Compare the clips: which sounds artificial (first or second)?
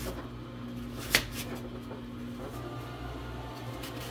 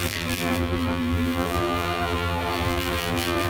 second